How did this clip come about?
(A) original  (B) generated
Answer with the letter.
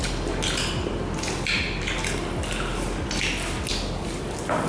A